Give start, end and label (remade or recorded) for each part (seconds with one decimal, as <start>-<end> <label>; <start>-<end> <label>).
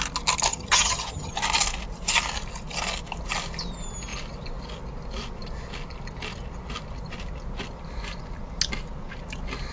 0.0-0.5 recorded; 0.5-1.3 remade; 1.3-9.7 recorded